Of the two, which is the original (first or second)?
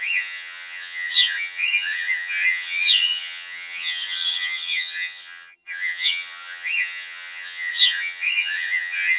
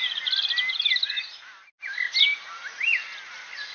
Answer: second